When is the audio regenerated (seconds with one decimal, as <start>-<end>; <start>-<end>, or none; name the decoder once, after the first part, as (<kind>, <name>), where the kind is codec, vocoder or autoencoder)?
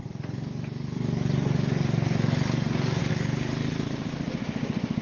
0.0-3.0 (vocoder, BigVGAN v2)